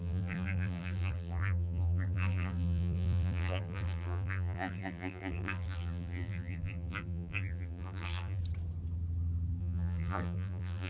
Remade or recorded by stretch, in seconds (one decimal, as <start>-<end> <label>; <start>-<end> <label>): 0.0-8.4 remade; 8.4-9.6 recorded; 9.6-10.9 remade